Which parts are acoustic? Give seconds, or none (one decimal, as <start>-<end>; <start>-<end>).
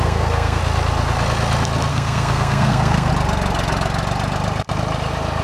0.6-1.9; 3.1-5.4